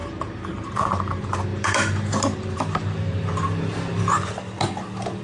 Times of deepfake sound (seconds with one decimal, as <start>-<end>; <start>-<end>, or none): none